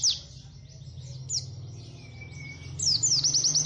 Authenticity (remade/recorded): recorded